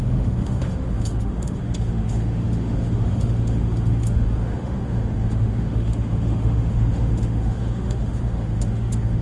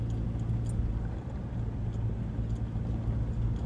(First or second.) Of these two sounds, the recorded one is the second